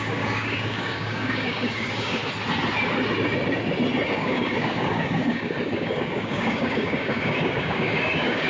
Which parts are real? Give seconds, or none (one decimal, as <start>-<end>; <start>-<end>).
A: 2.2-4.1